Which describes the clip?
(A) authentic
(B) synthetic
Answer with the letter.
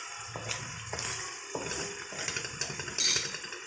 A